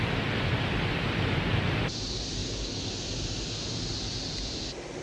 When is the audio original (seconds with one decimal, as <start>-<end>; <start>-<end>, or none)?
0.0-5.0